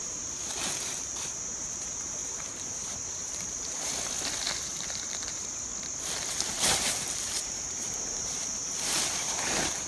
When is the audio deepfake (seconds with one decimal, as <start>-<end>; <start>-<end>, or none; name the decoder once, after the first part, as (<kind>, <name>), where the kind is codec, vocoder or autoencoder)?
0.0-3.9 (vocoder, BigVGAN v2); 4.6-5.7; 6.3-9.9